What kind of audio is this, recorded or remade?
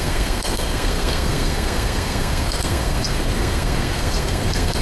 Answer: remade